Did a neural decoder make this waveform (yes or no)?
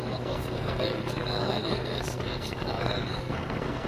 yes